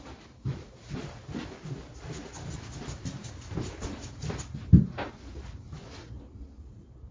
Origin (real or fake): real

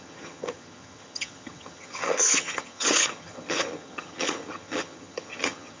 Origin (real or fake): fake